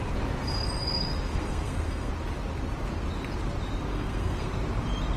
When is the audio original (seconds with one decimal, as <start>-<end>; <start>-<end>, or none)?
0.0-1.3; 2.1-3.9; 4.5-5.2